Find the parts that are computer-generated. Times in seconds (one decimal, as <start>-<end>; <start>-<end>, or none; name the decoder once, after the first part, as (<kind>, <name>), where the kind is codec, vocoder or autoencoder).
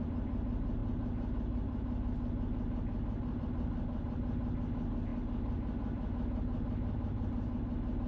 none